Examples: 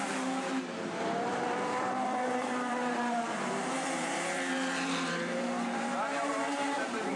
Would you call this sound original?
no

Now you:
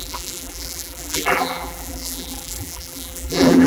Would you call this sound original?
no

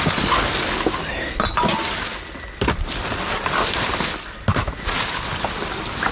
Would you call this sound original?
yes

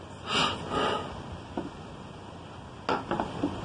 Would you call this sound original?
yes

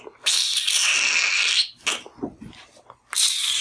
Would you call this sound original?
yes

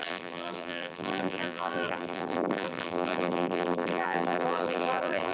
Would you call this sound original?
no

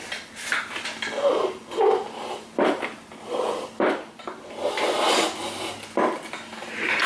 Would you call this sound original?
yes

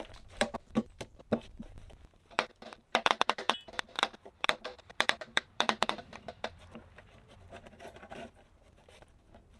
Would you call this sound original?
no